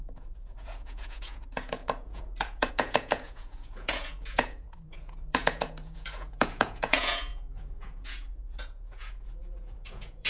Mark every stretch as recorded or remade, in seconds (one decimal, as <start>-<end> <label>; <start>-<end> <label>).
0.0-10.3 remade